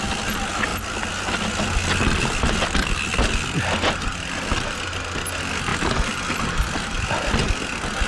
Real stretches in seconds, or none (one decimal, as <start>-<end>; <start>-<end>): 0.0-8.1